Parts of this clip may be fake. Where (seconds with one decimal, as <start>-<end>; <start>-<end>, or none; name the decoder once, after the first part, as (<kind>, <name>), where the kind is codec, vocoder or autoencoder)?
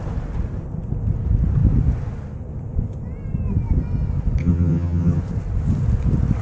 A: 4.4-5.2 (vocoder, HiFi-GAN)